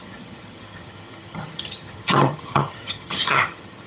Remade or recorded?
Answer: remade